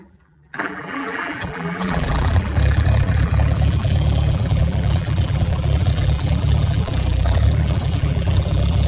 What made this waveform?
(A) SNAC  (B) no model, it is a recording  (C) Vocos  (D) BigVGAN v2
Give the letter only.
D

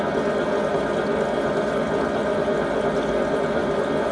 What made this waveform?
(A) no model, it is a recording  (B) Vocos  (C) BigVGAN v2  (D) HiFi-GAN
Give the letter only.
A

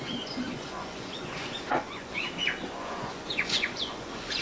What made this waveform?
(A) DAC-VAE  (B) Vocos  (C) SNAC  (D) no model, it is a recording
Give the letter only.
B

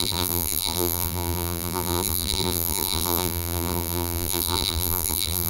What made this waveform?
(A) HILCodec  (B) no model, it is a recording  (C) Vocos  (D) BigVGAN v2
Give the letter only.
D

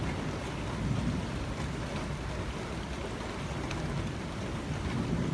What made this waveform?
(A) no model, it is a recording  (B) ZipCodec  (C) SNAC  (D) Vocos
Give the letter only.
A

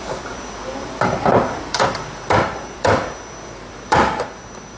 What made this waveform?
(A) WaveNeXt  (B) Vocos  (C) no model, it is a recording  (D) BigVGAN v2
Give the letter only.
D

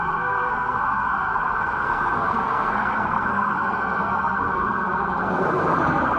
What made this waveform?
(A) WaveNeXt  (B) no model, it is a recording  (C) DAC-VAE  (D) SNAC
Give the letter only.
D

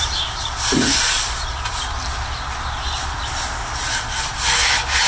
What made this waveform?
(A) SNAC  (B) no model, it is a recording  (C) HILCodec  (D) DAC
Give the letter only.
B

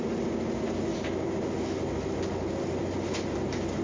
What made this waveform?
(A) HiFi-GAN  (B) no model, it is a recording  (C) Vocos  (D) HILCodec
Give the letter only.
B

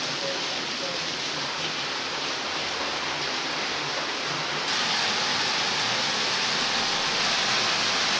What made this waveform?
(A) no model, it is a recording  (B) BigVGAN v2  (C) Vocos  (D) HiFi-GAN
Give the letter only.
A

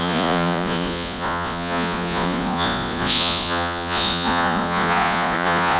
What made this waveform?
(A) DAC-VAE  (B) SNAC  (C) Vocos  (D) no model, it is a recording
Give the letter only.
C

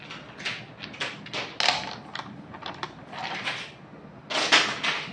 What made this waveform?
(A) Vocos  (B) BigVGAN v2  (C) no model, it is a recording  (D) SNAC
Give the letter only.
C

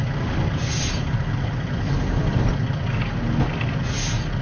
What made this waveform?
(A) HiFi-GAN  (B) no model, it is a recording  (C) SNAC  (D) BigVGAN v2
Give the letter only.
B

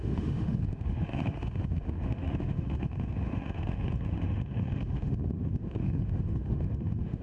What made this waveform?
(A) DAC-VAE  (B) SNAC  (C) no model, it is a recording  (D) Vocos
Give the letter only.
A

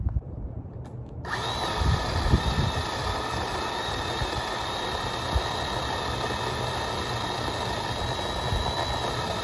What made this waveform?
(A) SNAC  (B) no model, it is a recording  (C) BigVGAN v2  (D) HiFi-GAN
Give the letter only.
B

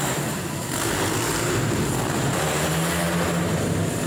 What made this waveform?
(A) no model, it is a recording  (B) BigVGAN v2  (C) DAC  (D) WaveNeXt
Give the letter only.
A